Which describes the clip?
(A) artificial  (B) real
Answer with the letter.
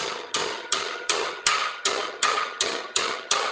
A